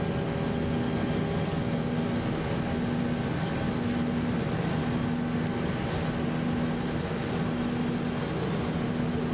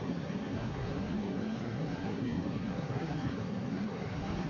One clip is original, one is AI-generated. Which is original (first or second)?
first